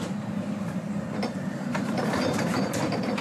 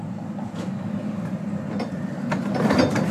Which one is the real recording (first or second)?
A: second